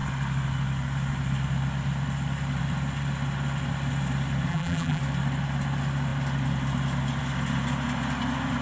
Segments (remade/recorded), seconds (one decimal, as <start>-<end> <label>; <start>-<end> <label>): 0.0-4.5 recorded; 4.5-5.0 remade; 5.0-8.6 recorded